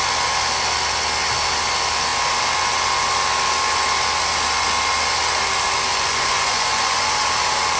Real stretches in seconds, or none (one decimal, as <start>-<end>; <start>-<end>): 0.0-5.9; 7.2-7.8